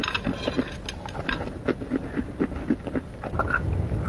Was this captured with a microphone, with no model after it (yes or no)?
yes